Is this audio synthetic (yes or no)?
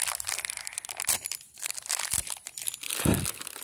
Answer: no